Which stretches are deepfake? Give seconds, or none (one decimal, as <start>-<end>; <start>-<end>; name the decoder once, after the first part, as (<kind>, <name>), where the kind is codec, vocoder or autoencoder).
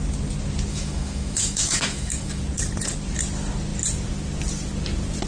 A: 0.7-2.4 (autoencoder, DAC-VAE)